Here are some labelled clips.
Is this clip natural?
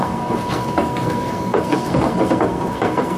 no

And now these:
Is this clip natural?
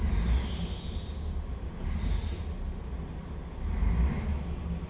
yes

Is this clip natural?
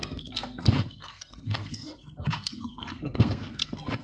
no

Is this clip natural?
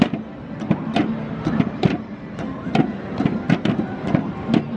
yes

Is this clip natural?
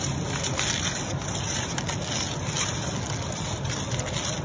yes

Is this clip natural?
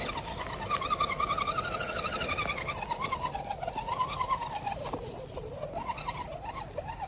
yes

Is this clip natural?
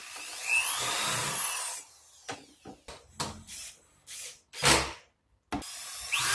yes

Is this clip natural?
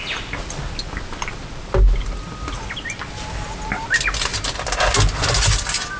yes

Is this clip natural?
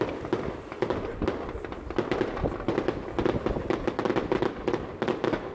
yes